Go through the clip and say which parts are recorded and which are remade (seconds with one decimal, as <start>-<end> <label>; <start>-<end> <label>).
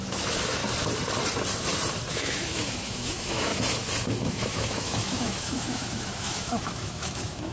0.0-0.6 remade; 0.6-2.1 recorded; 2.1-3.5 remade; 3.5-4.2 recorded; 4.2-7.5 remade